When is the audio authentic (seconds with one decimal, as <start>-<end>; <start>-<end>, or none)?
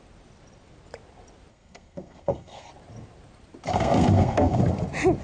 0.0-1.5; 2.7-3.7; 4.6-5.2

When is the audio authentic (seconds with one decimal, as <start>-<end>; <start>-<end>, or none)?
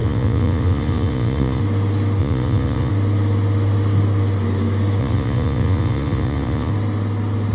1.6-2.2; 2.9-5.0; 6.7-7.5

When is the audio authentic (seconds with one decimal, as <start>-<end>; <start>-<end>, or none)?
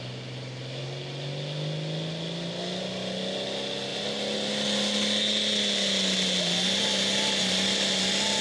0.0-3.9; 4.5-8.4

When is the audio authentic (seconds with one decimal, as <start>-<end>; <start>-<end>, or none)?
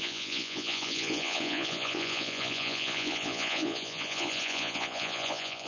none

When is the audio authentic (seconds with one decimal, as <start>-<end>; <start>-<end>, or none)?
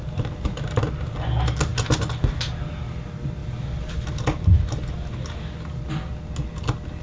0.0-7.0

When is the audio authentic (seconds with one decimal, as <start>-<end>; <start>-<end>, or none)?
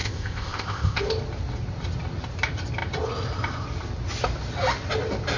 1.0-5.4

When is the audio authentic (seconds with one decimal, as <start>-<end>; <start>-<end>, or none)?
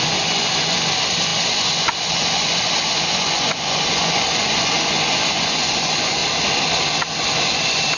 6.2-7.3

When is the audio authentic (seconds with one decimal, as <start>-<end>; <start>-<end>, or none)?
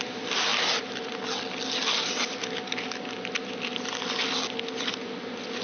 0.0-5.6